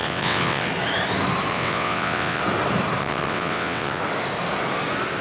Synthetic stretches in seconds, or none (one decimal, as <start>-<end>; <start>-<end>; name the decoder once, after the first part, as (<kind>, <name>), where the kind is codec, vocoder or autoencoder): 0.0-0.7 (vocoder, WaveNeXt); 1.5-2.4; 3.0-4.0